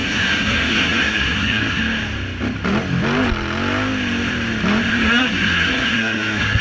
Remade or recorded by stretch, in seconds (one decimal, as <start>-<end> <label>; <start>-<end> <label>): 0.0-1.8 remade; 1.8-4.9 recorded; 4.9-6.6 remade